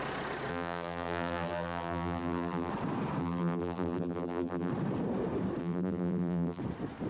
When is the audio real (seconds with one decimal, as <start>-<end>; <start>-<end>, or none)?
0.0-0.5; 2.7-3.2; 4.7-5.6; 6.6-7.1